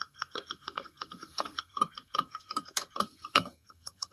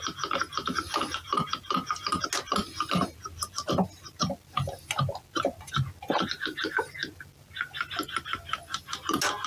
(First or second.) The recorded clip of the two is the second